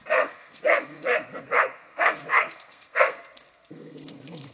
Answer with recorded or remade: remade